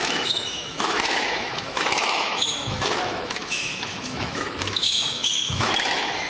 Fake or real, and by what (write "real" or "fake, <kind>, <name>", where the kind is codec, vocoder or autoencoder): fake, autoencoder, DAC-VAE